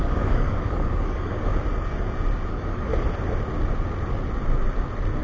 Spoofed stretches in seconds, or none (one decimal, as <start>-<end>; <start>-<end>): 0.0-1.5; 2.5-2.9